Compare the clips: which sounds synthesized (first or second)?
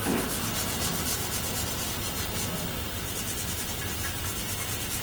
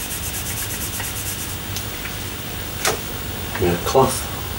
first